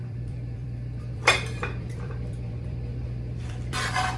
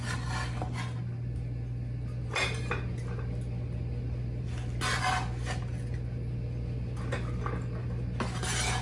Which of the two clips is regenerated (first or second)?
first